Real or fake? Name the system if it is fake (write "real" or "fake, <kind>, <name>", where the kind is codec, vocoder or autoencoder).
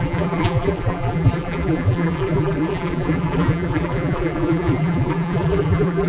fake, vocoder, BigVGAN v2